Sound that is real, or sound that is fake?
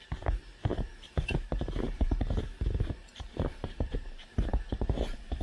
fake